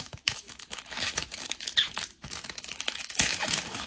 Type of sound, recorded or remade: remade